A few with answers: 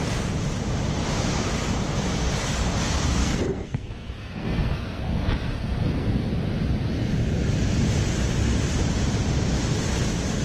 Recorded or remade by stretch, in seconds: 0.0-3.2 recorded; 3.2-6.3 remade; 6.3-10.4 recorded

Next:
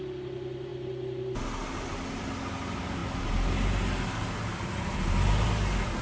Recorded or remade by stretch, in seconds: 0.0-6.0 recorded

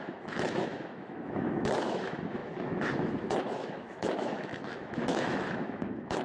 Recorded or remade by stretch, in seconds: 0.0-6.2 remade

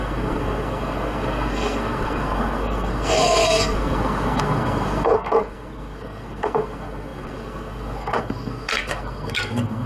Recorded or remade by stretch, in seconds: 0.0-9.9 remade

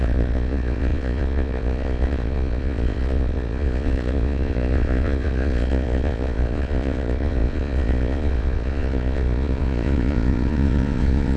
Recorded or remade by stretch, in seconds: 0.0-11.4 remade

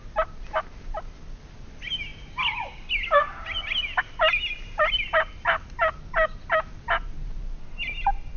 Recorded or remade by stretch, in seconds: 0.0-8.4 recorded

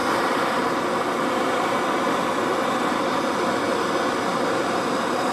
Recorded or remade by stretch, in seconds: 0.0-3.2 remade; 3.2-4.3 recorded; 4.3-5.3 remade